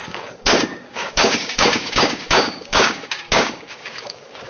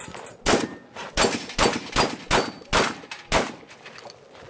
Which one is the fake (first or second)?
first